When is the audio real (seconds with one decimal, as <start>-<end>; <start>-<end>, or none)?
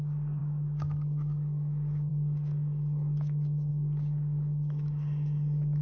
none